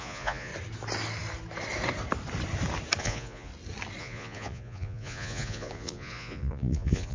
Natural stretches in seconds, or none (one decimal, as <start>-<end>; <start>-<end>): 0.5-3.0; 3.5-4.0

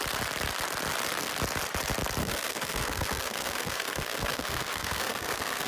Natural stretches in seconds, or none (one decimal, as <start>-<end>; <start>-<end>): 0.0-2.2

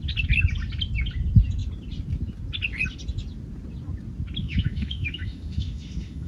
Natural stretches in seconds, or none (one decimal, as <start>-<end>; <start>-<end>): 0.0-4.4

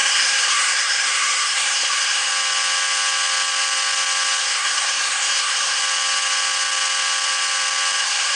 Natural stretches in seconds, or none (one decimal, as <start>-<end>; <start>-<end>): 2.3-4.4; 5.8-8.0